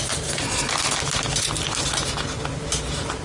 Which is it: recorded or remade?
recorded